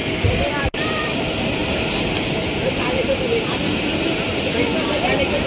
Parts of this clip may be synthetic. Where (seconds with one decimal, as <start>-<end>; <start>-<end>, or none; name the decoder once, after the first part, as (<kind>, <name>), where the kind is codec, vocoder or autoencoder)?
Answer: 0.0-1.2 (vocoder, BigVGAN v2)